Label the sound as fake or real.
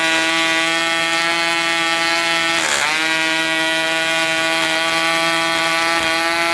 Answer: real